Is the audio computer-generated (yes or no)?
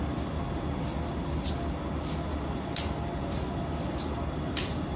no